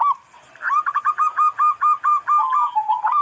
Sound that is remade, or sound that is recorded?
recorded